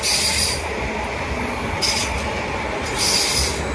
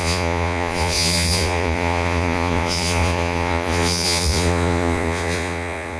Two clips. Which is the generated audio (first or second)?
second